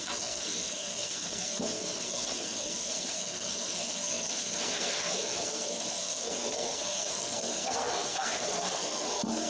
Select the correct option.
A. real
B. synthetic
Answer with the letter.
B